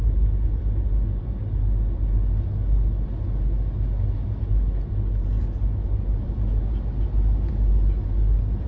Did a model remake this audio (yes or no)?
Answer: no